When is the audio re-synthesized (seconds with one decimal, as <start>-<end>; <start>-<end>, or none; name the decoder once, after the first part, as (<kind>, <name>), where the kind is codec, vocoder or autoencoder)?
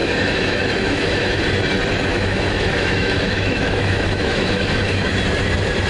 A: 0.0-1.4 (autoencoder, DAC-VAE); 2.1-5.2